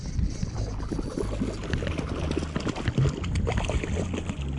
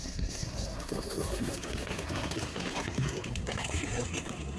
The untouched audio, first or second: first